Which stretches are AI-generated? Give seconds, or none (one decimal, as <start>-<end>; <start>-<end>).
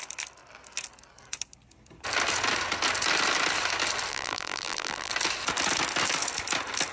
4.1-5.1